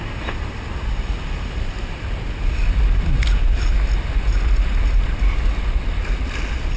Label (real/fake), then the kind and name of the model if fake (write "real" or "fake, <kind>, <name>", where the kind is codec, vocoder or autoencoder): real